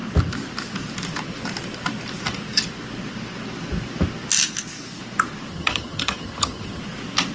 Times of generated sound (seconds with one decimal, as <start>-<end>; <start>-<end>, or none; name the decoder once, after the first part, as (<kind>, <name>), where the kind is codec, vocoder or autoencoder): 5.5-6.8 (vocoder, HiFi-GAN)